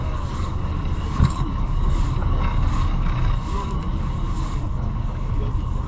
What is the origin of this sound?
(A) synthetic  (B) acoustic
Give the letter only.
A